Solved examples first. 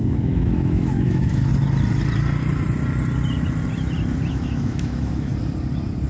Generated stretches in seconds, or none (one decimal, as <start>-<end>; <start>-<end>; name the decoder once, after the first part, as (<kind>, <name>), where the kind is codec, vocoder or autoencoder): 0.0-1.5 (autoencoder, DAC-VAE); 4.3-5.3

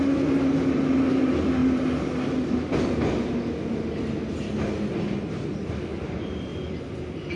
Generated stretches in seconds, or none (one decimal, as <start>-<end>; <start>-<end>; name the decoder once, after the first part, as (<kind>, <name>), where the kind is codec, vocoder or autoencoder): none

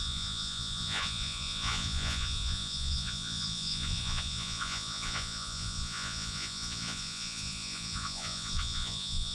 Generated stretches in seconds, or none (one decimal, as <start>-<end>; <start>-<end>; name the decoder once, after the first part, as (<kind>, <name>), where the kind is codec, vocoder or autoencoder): 0.0-9.3 (vocoder, Vocos)

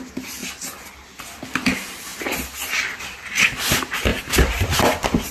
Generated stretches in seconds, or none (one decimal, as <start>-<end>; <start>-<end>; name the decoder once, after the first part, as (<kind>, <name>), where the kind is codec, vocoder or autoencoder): 4.1-4.8 (vocoder, BigVGAN v2)

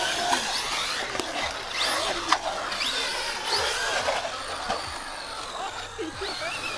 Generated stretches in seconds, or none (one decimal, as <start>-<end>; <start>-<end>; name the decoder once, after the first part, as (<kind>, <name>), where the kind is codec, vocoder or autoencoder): none

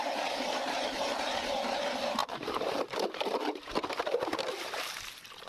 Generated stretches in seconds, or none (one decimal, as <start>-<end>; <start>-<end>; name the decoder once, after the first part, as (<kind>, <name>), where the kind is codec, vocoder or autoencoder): 0.0-5.5 (vocoder, BigVGAN v2)